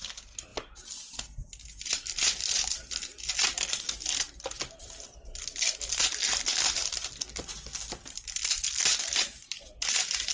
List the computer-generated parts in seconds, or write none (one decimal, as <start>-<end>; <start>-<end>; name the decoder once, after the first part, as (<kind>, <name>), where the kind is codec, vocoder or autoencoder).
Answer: none